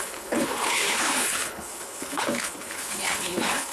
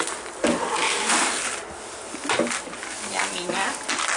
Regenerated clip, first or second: first